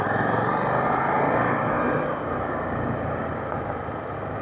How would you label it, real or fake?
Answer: real